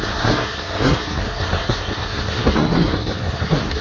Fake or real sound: fake